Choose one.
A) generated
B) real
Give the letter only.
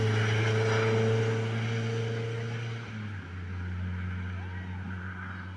B